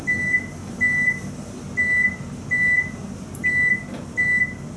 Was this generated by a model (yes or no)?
no